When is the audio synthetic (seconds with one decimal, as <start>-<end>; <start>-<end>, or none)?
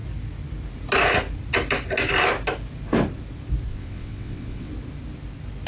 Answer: 3.7-4.7